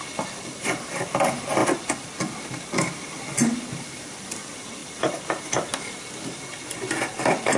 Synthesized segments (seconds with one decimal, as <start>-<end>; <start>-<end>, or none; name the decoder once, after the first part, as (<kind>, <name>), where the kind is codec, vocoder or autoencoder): none